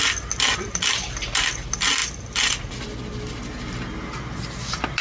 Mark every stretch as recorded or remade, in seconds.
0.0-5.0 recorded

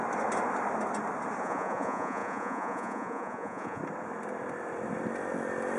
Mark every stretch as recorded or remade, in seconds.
0.0-1.4 recorded; 1.4-3.8 remade; 3.8-5.8 recorded

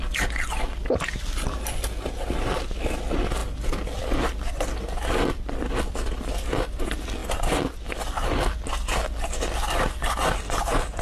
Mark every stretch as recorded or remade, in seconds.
0.0-11.0 recorded

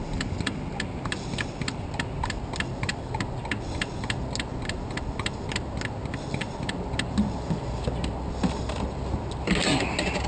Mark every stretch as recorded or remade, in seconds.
0.0-10.3 recorded

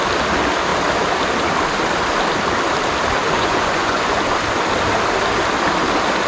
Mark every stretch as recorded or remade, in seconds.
0.0-3.2 recorded; 3.2-4.2 remade; 4.2-6.3 recorded

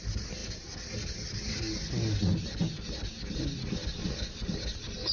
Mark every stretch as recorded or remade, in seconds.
0.0-5.1 recorded

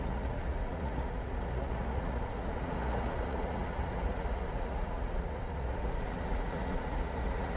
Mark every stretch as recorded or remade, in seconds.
0.0-7.6 remade

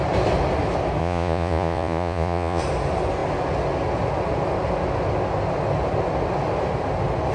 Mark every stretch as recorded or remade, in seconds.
0.0-1.0 recorded; 1.0-2.6 remade; 2.6-7.3 recorded